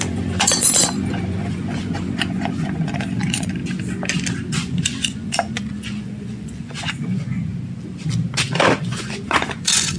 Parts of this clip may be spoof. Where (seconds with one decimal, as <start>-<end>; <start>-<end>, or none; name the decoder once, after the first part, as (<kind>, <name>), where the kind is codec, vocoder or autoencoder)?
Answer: 0.0-3.6 (vocoder, Vocos); 4.5-7.5; 8.8-10.0